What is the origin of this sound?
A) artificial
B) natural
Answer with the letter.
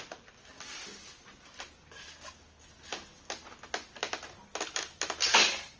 B